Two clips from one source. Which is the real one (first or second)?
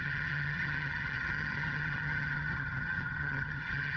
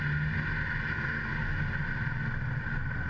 second